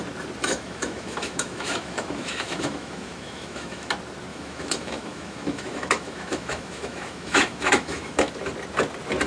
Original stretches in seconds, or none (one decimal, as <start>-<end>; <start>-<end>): 0.0-0.4; 3.9-4.3; 8.3-9.3